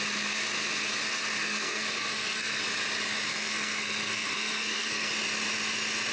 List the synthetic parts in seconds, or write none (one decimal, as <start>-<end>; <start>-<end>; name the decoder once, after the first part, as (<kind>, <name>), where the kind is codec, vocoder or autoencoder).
1.4-2.6 (codec, SNAC); 3.3-5.1